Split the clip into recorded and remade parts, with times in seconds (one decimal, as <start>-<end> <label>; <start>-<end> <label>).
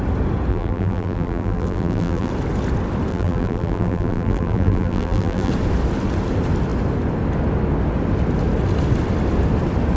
0.0-0.5 recorded; 0.5-2.3 remade; 2.3-3.1 recorded; 3.1-5.5 remade; 5.5-10.0 recorded